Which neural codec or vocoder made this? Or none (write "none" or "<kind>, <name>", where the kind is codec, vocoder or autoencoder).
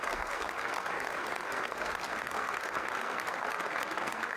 codec, SNAC